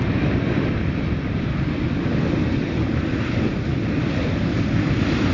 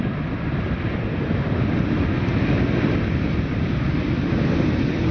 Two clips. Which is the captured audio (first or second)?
second